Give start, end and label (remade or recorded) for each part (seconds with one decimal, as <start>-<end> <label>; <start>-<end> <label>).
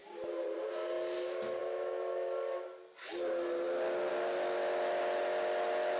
0.0-0.7 remade; 0.7-6.0 recorded